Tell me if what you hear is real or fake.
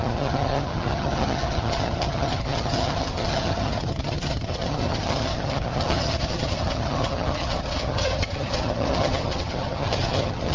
fake